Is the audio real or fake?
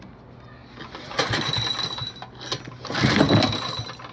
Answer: real